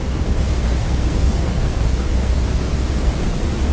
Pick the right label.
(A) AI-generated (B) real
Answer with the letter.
A